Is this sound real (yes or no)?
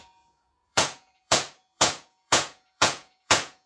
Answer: no